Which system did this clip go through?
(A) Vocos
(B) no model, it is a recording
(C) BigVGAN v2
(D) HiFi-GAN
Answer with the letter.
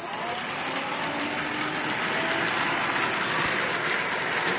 B